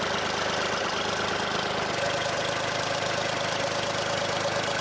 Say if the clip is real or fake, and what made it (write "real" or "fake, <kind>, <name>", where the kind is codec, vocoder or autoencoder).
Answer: real